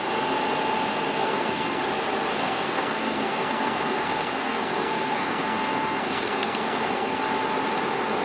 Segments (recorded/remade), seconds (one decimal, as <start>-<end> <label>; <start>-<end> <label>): 0.0-1.2 recorded; 1.2-1.8 remade; 1.8-2.3 recorded; 2.3-7.2 remade; 7.2-8.2 recorded